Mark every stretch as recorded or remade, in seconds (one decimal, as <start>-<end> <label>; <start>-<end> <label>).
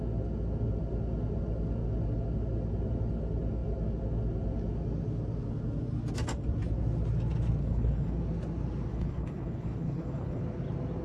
0.0-7.6 recorded; 7.6-8.2 remade; 8.2-8.9 recorded; 8.9-10.4 remade; 10.4-11.0 recorded